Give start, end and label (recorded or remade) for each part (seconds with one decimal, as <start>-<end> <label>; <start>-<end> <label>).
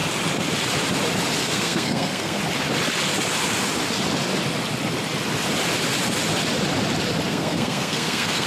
0.0-1.4 recorded; 1.4-2.4 remade; 2.4-7.3 recorded; 7.3-8.5 remade